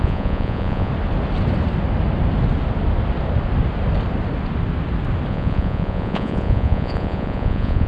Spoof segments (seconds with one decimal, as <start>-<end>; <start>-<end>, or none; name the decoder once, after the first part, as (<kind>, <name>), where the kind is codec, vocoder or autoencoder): 0.0-0.9 (vocoder, Vocos); 5.3-7.9